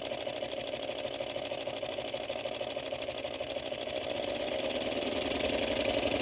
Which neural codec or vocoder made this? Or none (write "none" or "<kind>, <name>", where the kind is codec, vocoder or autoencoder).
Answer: none